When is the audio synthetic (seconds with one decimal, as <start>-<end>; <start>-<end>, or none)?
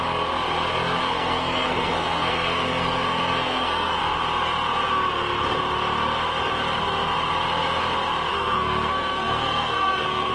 1.0-4.0; 8.3-10.3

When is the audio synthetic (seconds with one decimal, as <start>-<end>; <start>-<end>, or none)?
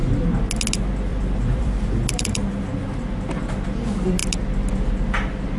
1.1-2.5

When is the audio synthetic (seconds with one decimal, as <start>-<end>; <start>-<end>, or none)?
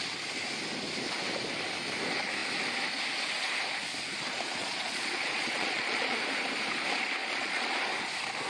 4.6-6.2; 7.2-7.8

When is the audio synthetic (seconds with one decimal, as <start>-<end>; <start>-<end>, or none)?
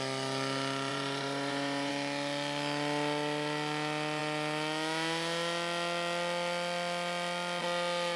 0.9-1.9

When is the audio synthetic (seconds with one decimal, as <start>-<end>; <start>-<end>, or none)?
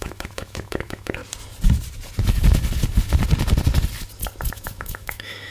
0.0-1.2; 4.5-5.5